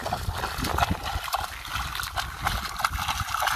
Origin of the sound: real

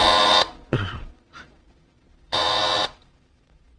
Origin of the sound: fake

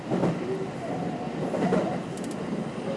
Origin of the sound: real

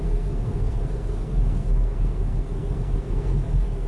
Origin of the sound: fake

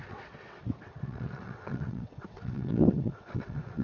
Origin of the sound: fake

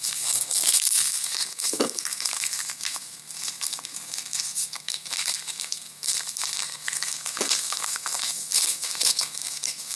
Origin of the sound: fake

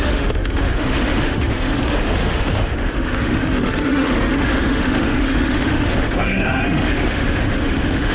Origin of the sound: fake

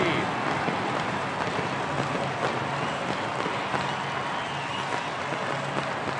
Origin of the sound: real